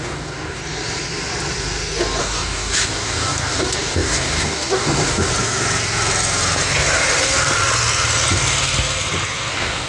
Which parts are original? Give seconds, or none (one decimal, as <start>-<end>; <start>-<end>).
0.6-2.2; 5.3-9.5